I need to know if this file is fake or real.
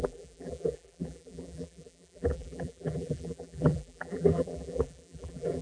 fake